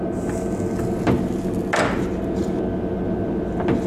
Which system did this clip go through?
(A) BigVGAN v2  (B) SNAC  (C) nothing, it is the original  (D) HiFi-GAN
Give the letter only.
C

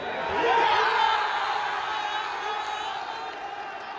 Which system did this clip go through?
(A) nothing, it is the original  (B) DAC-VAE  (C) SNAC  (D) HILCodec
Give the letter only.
A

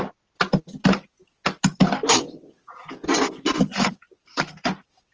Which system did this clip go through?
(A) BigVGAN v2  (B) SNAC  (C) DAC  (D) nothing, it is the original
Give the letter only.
D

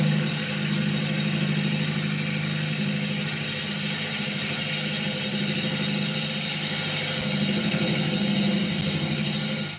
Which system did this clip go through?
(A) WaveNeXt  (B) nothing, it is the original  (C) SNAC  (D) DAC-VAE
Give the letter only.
B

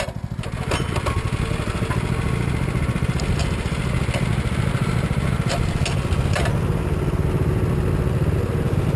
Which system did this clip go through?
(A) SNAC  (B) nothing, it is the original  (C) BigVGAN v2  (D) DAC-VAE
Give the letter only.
B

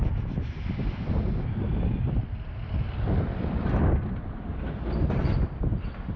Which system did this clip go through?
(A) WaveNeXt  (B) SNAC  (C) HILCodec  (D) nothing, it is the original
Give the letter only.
D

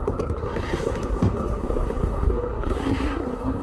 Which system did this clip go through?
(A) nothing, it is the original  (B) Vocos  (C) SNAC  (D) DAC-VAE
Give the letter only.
C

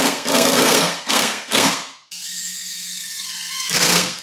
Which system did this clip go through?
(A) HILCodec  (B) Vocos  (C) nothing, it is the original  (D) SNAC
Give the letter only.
D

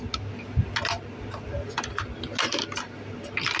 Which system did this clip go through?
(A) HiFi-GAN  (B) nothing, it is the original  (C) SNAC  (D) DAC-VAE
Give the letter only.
B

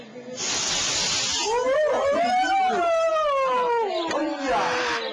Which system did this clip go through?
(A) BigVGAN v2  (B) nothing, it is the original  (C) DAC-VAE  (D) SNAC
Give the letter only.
B